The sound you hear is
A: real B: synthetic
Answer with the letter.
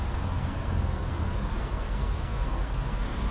B